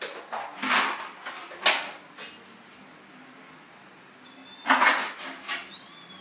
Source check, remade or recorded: recorded